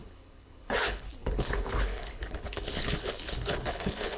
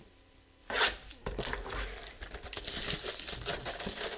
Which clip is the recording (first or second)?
second